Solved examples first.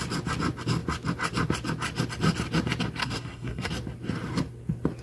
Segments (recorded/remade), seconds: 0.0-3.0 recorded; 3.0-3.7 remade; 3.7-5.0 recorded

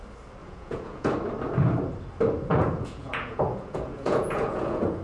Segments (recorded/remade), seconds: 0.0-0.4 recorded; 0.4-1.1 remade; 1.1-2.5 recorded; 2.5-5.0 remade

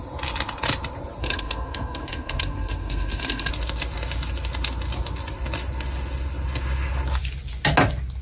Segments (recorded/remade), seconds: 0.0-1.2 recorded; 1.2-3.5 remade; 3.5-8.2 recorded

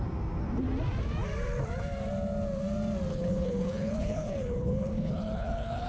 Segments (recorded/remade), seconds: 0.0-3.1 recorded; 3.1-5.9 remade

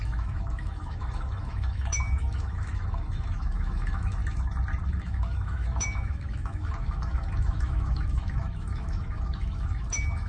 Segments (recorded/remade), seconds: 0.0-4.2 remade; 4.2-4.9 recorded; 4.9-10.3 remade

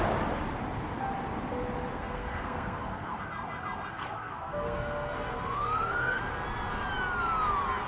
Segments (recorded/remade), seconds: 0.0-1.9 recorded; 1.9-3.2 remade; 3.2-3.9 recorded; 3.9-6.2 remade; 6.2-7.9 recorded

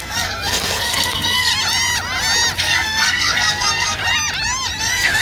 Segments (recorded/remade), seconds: 0.0-1.5 remade; 1.5-2.6 recorded; 2.6-4.0 remade; 4.0-4.8 recorded; 4.8-5.2 remade